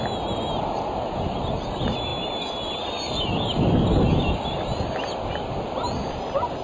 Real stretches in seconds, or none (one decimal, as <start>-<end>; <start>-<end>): 0.0-6.6